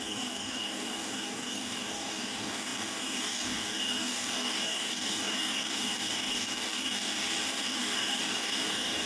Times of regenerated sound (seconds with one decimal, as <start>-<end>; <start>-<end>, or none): 0.0-9.1